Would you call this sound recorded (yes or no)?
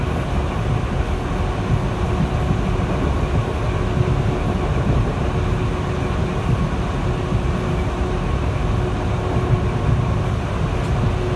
yes